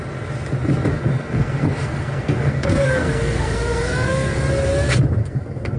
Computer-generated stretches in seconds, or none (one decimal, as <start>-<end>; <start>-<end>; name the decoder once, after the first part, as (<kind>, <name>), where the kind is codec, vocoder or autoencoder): 0.9-4.4 (codec, SNAC); 5.2-5.8